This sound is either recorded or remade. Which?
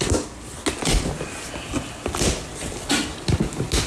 recorded